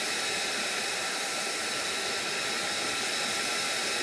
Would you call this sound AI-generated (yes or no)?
no